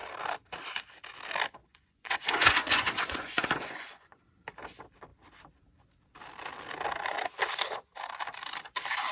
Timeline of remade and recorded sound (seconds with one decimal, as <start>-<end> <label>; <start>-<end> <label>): 0.0-1.6 recorded; 1.6-4.2 remade; 4.2-9.1 recorded